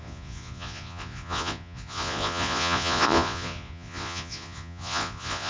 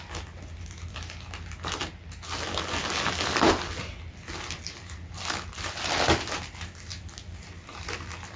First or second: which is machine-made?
first